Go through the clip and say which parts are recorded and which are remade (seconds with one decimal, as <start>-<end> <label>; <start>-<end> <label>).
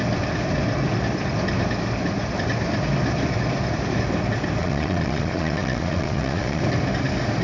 0.0-4.6 recorded; 4.6-6.6 remade; 6.6-7.4 recorded